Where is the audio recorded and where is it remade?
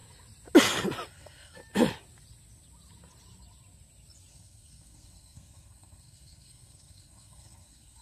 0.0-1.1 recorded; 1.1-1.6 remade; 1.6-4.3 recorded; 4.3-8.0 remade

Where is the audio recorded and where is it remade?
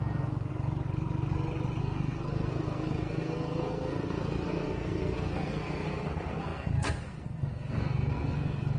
0.0-0.5 remade; 0.5-1.8 recorded; 1.8-8.8 remade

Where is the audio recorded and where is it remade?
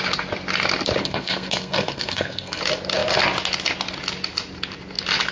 0.0-1.0 recorded; 1.0-2.6 remade; 2.6-5.3 recorded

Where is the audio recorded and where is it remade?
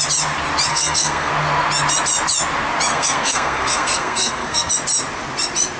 0.0-0.7 recorded; 0.7-1.3 remade; 1.3-2.9 recorded; 2.9-4.7 remade; 4.7-5.8 recorded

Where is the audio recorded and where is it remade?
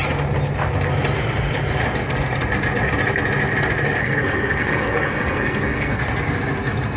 0.0-4.0 recorded; 4.0-6.0 remade; 6.0-7.0 recorded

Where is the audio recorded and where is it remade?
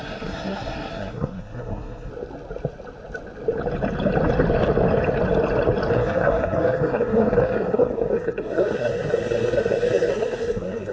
0.0-2.1 remade; 2.1-5.9 recorded; 5.9-10.9 remade